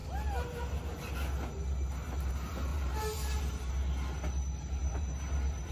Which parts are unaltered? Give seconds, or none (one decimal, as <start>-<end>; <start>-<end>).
0.0-2.7; 3.7-4.8